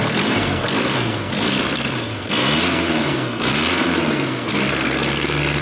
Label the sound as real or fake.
fake